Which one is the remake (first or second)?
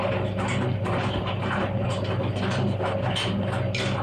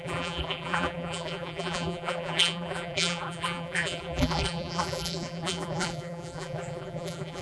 second